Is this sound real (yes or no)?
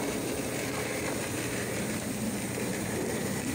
no